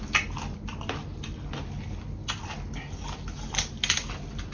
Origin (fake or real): real